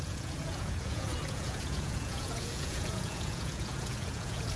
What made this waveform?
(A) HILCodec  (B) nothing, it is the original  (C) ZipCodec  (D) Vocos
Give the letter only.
D